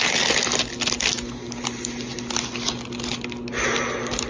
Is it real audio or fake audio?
real